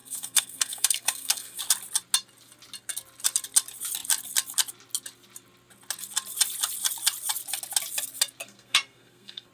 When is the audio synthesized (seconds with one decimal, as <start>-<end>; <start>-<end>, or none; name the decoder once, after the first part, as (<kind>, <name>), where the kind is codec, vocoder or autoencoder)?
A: 0.0-1.6 (codec, SNAC); 8.4-9.5